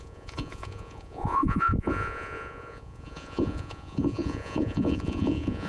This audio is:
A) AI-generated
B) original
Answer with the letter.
A